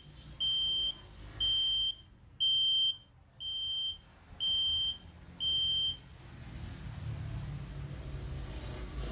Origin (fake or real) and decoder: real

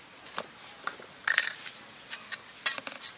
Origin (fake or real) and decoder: real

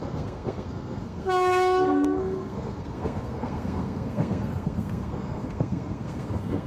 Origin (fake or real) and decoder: fake, codec, SNAC